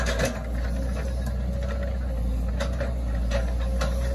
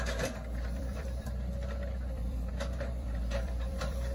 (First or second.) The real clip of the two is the first